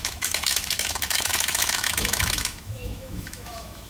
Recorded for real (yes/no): no